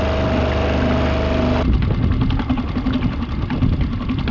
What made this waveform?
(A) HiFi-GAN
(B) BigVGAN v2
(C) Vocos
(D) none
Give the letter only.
D